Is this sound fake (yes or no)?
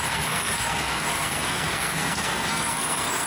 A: yes